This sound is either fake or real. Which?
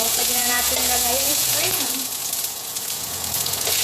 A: fake